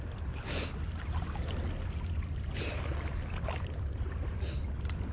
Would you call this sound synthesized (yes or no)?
no